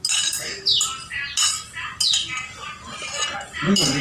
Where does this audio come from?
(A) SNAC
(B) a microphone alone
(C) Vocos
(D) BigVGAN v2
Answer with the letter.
B